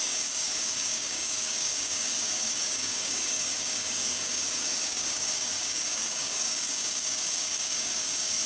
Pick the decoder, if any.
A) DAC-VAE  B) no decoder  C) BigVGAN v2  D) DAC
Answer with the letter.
D